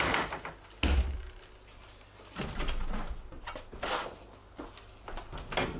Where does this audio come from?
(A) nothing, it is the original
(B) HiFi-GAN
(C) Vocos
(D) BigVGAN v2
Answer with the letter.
A